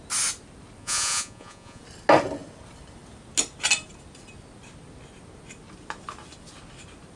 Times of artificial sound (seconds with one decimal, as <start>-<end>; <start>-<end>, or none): 0.8-1.8